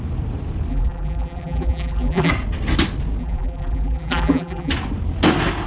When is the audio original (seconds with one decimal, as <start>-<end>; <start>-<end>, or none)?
0.0-0.7; 2.3-3.2; 4.7-5.7